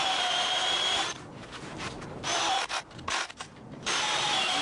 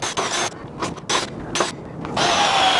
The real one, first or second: second